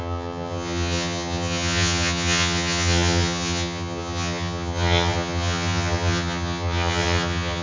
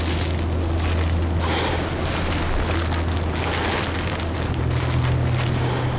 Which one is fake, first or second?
first